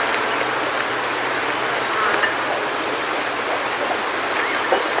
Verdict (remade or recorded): recorded